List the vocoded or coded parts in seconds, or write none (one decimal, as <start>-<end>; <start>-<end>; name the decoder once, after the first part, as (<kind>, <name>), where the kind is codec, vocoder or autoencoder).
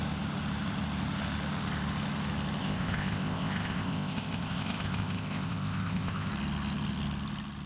2.6-6.3 (codec, ZipCodec)